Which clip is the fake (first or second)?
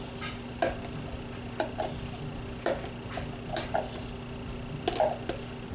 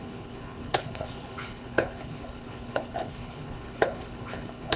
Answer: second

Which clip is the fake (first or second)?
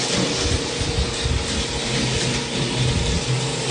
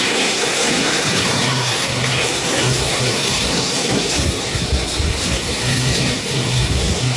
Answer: second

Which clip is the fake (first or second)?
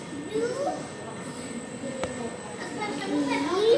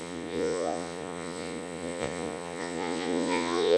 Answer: second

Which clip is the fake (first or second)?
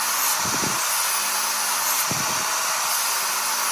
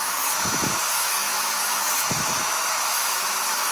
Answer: second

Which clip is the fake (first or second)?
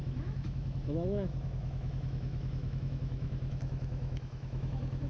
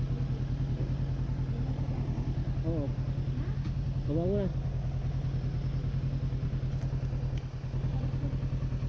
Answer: first